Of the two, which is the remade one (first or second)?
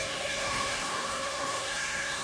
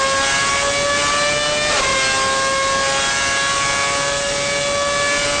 first